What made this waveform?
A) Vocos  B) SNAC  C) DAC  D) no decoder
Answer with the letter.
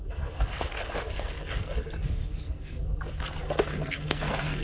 B